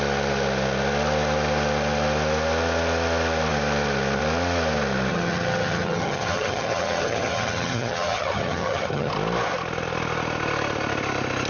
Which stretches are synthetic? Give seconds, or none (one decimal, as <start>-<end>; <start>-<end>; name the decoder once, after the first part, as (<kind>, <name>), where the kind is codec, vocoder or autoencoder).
5.1-9.1 (vocoder, HiFi-GAN)